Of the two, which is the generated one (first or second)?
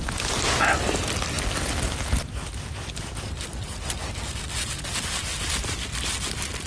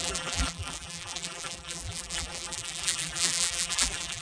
second